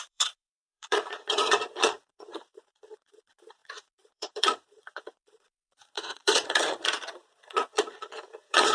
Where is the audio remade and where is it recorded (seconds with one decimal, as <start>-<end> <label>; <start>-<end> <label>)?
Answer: 0.0-8.7 remade